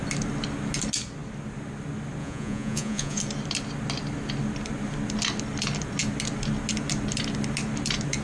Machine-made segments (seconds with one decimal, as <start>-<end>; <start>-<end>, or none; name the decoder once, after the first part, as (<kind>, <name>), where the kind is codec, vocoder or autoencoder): 2.2-3.2 (vocoder, Vocos)

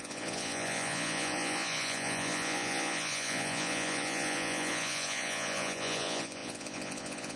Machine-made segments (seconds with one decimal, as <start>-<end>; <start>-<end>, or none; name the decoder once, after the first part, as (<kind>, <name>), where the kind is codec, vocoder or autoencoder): 0.0-7.4 (vocoder, Vocos)